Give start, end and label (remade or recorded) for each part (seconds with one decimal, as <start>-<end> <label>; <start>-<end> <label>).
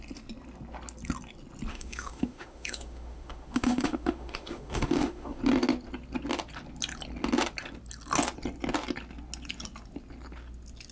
0.0-1.7 recorded; 1.7-5.4 remade; 5.4-10.9 recorded